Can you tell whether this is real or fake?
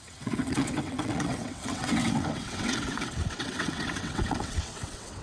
fake